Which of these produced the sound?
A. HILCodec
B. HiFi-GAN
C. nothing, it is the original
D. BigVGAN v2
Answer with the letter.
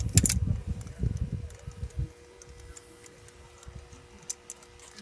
C